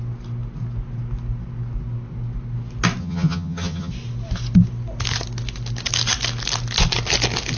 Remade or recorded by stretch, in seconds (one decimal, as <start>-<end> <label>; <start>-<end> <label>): 0.0-3.0 recorded; 3.0-3.9 remade; 3.9-7.6 recorded